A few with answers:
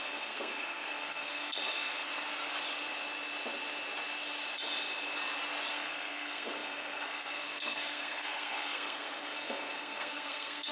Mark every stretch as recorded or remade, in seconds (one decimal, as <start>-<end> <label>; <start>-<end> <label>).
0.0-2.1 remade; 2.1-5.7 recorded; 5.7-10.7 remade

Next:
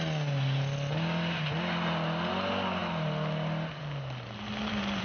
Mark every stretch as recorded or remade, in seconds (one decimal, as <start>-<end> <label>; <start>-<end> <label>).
0.0-5.0 recorded

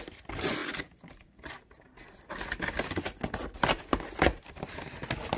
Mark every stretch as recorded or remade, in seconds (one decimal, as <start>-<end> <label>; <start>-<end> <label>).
0.0-5.4 recorded

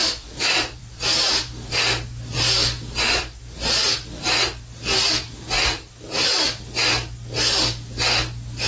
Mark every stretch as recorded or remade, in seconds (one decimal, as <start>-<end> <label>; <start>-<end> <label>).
0.0-8.7 recorded

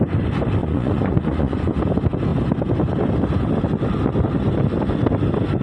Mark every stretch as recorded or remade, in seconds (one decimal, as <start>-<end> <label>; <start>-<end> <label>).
0.0-0.6 recorded; 0.6-1.8 remade; 1.8-5.6 recorded